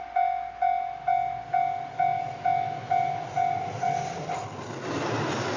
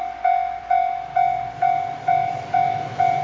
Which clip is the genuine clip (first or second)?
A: first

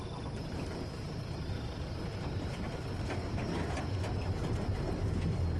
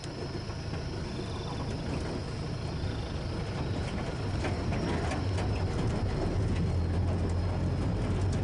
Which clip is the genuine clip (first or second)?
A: second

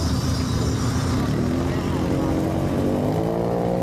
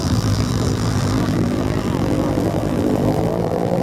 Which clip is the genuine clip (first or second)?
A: first